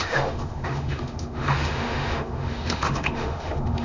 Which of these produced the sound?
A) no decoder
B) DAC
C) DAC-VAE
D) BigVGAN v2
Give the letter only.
C